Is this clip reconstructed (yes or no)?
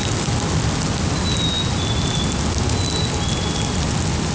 no